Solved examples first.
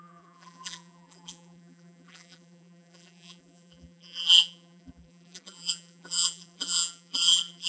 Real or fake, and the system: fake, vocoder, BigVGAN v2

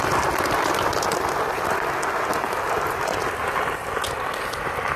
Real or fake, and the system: real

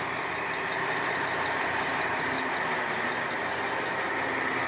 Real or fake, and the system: real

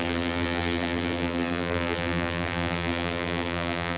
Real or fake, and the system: fake, vocoder, BigVGAN v2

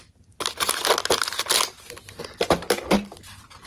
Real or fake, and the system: real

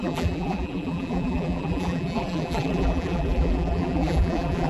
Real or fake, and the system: fake, vocoder, BigVGAN v2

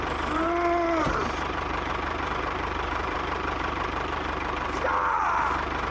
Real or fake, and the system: fake, vocoder, BigVGAN v2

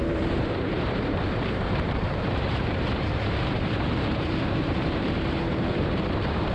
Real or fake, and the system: fake, vocoder, BigVGAN v2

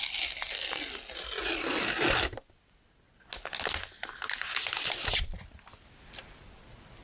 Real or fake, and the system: real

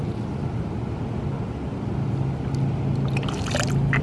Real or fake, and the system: real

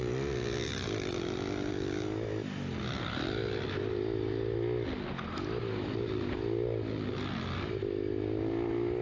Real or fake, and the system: real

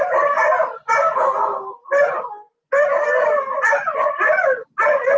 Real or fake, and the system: real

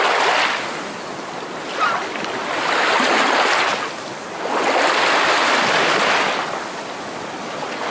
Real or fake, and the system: real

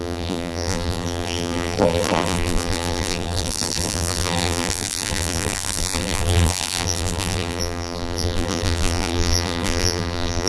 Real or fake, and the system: fake, vocoder, BigVGAN v2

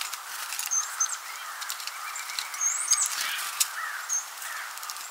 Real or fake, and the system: fake, vocoder, BigVGAN v2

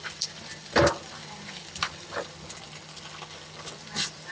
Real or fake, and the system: fake, vocoder, BigVGAN v2